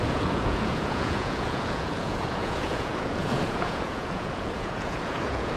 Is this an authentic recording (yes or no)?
no